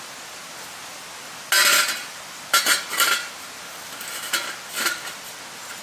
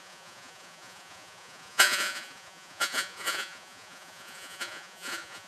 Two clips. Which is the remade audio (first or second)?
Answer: second